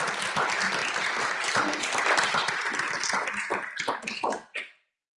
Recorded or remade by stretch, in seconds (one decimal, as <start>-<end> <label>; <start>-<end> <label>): 0.0-5.2 recorded